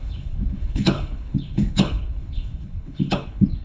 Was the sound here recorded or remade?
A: remade